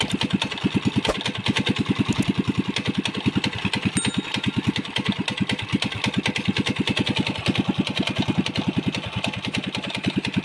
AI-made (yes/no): no